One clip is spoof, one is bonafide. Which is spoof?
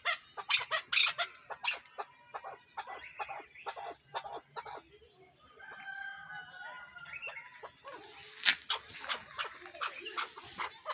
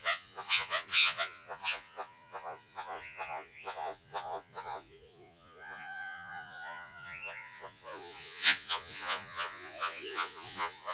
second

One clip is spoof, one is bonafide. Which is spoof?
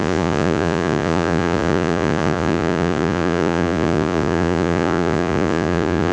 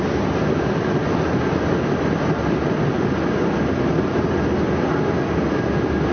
first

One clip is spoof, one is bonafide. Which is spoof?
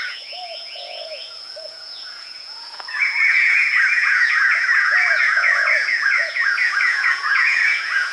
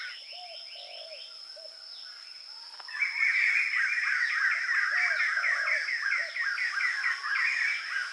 first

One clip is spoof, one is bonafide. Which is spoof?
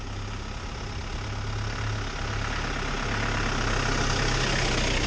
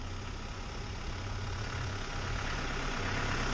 second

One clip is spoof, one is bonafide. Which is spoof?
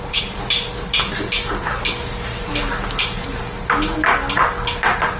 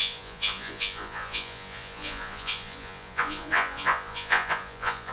second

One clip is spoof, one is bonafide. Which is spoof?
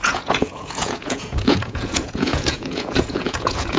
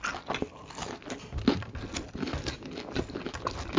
first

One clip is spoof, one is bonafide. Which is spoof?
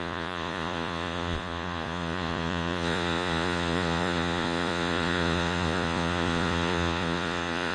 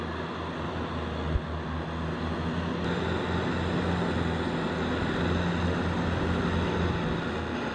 first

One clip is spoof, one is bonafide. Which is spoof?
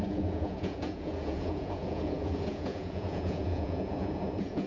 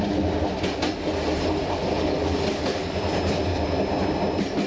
first